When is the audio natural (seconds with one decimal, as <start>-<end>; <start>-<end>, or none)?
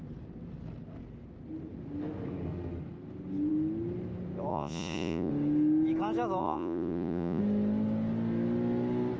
0.0-4.5; 5.3-6.4; 7.4-9.2